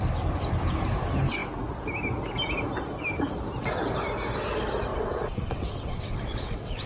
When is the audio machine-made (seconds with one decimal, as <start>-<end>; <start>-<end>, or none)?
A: 4.9-6.9